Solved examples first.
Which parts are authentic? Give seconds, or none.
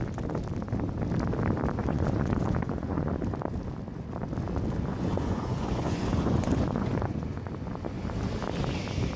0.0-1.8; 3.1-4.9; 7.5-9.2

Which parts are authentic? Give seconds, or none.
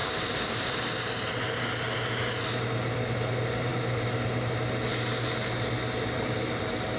1.4-3.7; 4.3-7.0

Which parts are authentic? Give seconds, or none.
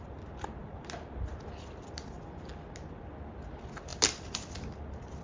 0.0-5.2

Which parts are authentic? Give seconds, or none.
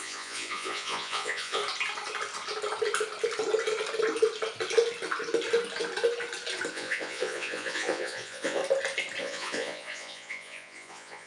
1.6-6.7; 8.6-9.2